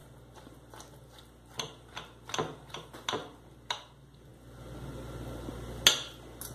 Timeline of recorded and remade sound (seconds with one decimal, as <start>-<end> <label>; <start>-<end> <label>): 0.0-6.5 recorded